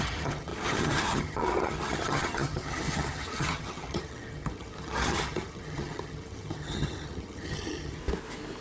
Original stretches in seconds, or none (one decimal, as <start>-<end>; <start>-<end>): 8.0-8.6